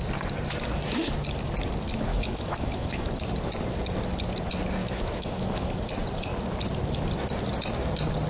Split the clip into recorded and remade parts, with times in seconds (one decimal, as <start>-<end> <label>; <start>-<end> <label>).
0.0-2.1 recorded; 2.1-3.1 remade; 3.1-4.8 recorded; 4.8-5.8 remade; 5.8-8.3 recorded